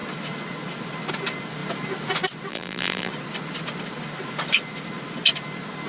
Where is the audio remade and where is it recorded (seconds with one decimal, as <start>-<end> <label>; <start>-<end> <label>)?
0.0-2.5 recorded; 2.5-3.1 remade; 3.1-5.9 recorded